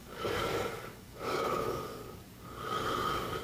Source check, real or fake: fake